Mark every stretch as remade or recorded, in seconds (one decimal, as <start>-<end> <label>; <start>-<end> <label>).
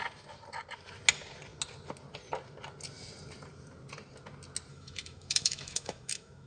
0.0-4.7 recorded; 4.7-6.5 remade